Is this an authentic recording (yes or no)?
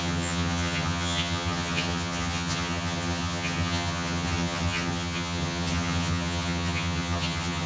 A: no